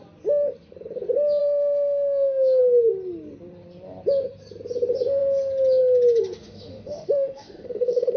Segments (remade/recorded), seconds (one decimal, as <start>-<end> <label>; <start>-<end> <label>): 0.0-1.4 recorded; 1.4-2.6 remade; 2.6-6.4 recorded; 6.4-8.2 remade